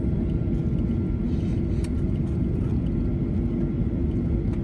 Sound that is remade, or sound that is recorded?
recorded